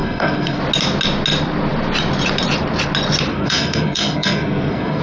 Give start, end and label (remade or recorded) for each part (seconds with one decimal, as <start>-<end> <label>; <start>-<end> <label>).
0.0-0.6 remade; 0.6-3.3 recorded; 3.3-5.0 remade